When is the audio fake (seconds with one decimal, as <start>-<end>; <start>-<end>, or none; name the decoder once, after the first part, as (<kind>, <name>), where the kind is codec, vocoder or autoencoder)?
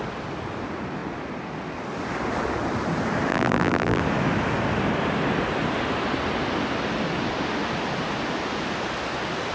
3.3-4.0 (vocoder, BigVGAN v2)